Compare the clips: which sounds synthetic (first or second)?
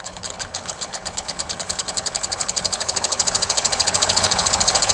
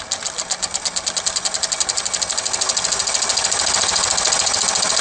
first